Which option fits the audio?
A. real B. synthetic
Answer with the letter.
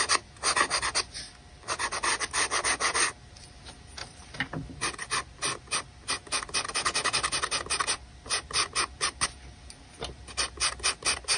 A